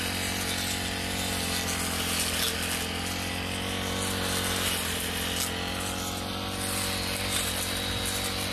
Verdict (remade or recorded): recorded